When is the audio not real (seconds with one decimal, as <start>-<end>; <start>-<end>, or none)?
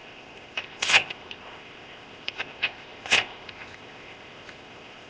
0.0-5.1